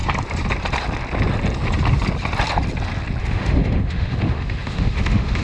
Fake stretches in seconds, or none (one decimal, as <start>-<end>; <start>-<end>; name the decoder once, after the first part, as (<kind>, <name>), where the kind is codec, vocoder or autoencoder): 3.2-5.4 (autoencoder, DAC-VAE)